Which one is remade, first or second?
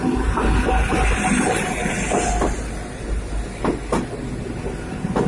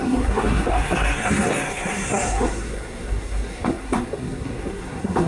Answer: second